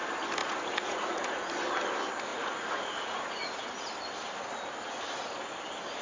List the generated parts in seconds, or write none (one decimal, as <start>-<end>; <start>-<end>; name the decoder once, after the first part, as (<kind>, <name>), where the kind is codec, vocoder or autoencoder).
0.4-1.5 (vocoder, Vocos); 2.3-3.6